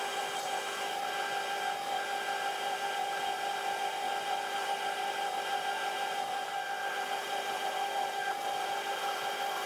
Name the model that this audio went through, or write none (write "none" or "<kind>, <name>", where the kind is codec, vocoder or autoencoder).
none